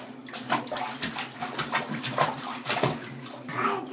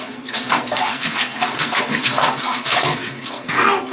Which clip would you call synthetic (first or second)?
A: second